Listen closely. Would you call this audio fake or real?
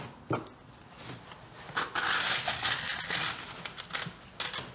real